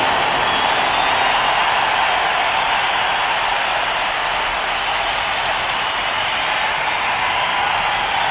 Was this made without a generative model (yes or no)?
yes